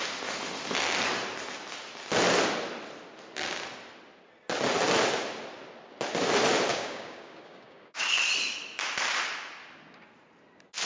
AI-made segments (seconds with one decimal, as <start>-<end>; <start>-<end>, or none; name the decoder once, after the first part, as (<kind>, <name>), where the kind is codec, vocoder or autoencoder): 6.7-8.2 (codec, DAC)

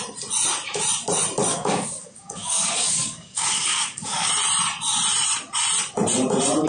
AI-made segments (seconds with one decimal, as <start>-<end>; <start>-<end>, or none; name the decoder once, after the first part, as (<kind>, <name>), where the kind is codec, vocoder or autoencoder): 1.5-4.3 (codec, DAC)

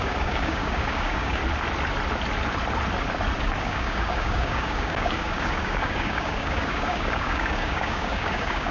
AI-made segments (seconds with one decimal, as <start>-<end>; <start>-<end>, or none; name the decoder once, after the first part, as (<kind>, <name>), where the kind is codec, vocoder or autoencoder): 0.0-1.4 (codec, DAC); 3.6-8.7

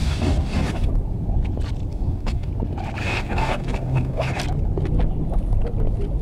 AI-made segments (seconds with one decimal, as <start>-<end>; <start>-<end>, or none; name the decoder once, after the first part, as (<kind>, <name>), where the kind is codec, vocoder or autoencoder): 0.0-0.9 (codec, DAC); 1.9-2.5; 3.0-4.4

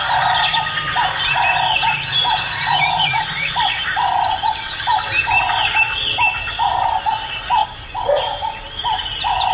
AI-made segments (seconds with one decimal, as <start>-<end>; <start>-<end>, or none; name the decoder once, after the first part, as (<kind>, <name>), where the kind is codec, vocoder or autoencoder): none

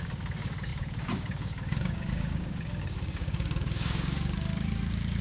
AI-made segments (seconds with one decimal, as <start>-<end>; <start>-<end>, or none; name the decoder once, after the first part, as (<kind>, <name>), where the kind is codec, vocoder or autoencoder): 0.0-5.2 (codec, DAC)

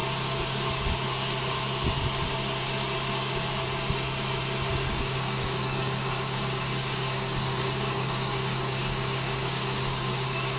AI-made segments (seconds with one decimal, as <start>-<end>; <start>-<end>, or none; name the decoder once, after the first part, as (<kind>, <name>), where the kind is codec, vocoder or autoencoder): 5.0-10.6 (codec, DAC)